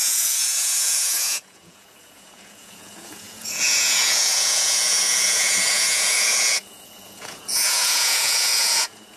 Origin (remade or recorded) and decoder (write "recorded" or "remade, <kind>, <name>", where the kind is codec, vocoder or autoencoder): remade, vocoder, Vocos